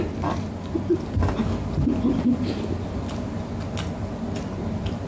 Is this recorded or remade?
recorded